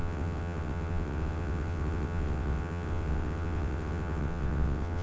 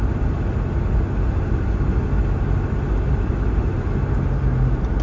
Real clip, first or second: second